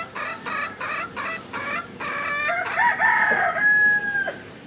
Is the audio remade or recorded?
recorded